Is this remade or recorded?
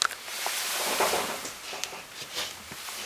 recorded